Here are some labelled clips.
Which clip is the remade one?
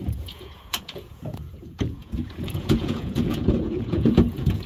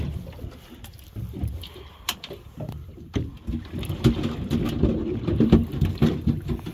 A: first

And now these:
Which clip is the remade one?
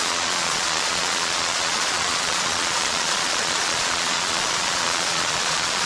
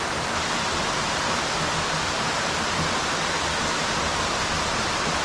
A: first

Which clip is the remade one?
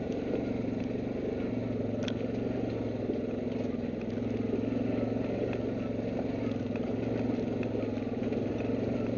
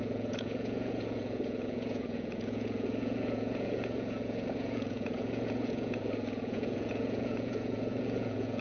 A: second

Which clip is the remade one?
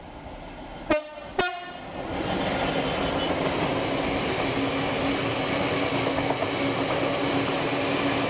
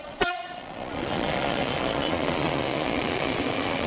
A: second